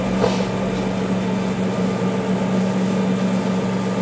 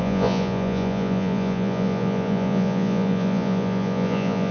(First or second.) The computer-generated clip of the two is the second